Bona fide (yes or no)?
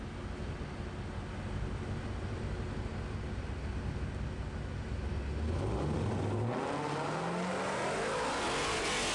yes